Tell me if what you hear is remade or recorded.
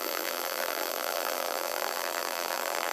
remade